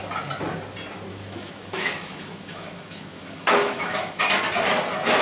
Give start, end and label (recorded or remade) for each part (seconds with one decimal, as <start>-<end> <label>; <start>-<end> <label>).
0.0-1.1 recorded; 1.1-4.2 remade; 4.2-5.2 recorded